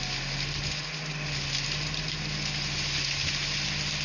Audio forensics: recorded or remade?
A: recorded